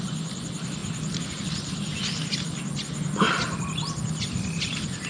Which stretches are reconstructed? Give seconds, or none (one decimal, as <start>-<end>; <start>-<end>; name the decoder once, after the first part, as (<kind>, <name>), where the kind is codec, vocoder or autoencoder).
none